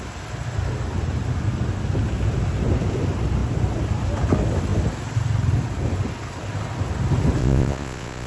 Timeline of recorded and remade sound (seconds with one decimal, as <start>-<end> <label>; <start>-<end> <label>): 0.0-7.4 recorded; 7.4-8.3 remade